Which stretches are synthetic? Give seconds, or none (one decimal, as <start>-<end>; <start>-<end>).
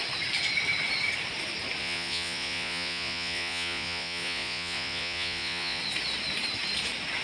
1.8-5.8